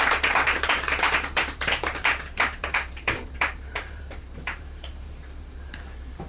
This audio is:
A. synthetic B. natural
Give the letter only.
A